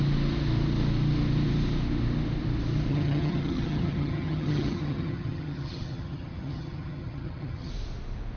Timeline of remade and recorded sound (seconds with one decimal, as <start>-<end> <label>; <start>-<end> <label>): 0.0-2.9 recorded; 2.9-7.7 remade; 7.7-8.4 recorded